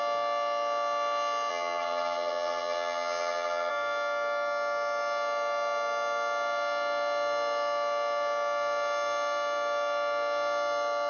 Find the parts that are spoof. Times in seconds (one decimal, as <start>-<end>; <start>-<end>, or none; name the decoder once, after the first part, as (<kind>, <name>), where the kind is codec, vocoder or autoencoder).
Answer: 1.5-3.7 (vocoder, HiFi-GAN)